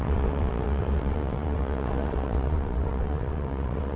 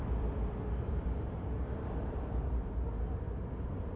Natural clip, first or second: second